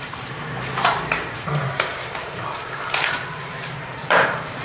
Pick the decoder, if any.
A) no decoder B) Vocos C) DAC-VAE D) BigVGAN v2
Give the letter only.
D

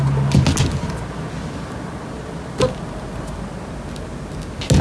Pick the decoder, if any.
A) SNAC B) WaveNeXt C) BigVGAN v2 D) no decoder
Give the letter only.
D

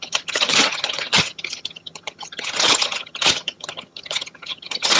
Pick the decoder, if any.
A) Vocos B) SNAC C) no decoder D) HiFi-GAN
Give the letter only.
D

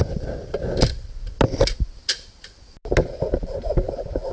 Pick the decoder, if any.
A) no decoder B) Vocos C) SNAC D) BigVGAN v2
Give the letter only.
A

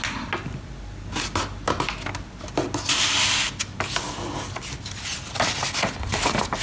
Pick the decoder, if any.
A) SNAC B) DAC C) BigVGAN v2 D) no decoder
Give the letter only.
D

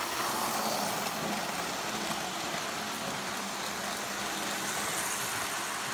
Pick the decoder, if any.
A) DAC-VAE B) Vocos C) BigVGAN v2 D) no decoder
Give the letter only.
D